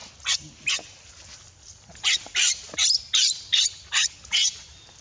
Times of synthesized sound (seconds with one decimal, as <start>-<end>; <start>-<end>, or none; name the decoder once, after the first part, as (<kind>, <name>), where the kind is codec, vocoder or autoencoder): none